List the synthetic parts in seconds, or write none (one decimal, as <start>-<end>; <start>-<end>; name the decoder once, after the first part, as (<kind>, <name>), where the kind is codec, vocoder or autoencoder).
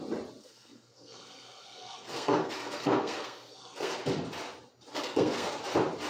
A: 0.4-4.0 (codec, SNAC); 4.9-5.6